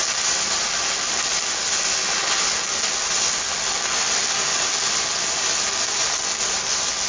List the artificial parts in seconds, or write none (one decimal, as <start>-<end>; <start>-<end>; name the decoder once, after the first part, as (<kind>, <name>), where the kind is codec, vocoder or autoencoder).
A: none